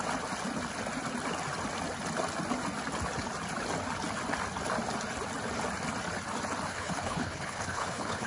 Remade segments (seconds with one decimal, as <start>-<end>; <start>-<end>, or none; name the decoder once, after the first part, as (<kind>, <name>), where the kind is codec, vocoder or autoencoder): 6.7-8.3 (codec, HILCodec)